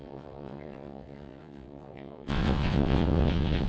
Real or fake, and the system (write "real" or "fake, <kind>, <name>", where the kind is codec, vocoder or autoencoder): fake, vocoder, WaveNeXt